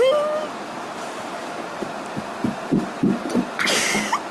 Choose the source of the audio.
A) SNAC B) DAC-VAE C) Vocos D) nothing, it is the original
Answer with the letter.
D